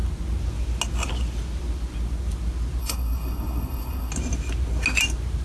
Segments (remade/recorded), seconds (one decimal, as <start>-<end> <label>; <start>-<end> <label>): 0.0-2.8 recorded; 2.8-4.1 remade; 4.1-5.4 recorded